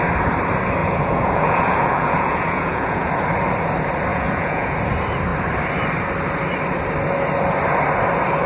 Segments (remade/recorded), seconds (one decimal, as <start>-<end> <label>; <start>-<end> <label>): 0.0-0.8 recorded; 0.8-3.1 remade; 3.1-4.1 recorded; 4.1-4.8 remade; 4.8-8.5 recorded